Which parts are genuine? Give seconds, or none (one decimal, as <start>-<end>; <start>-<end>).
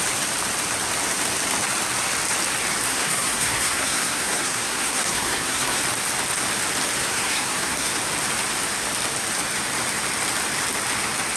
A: 0.0-2.9; 5.8-7.0; 7.9-11.4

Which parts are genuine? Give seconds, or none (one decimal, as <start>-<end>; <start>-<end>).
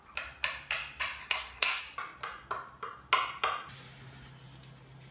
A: 0.0-1.2; 1.8-5.1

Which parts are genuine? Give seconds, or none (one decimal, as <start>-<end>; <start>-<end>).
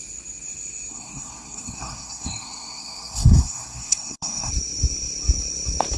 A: 0.0-0.9; 4.5-6.0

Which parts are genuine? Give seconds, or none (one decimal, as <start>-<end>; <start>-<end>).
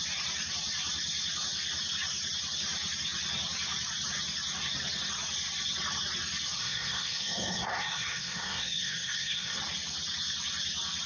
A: 0.0-6.6; 9.6-11.1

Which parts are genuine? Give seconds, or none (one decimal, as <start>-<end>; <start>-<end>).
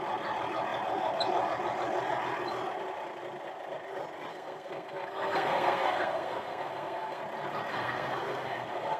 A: 0.0-4.3; 7.2-7.7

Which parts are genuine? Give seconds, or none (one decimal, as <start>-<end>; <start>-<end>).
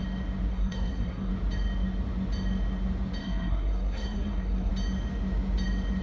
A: 0.0-0.5; 1.3-3.2; 4.7-6.0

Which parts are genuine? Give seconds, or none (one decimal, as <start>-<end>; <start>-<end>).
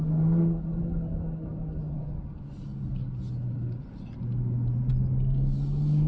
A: 0.0-6.1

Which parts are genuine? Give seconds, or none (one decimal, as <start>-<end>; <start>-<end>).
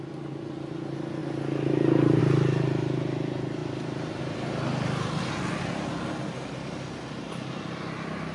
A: 0.0-8.3